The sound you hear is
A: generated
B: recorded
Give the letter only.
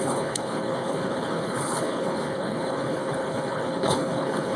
A